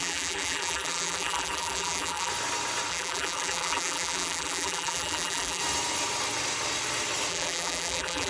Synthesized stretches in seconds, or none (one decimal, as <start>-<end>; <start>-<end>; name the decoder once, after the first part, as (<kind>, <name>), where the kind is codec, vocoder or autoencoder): 0.0-2.3 (vocoder, BigVGAN v2); 2.9-5.6; 7.3-8.3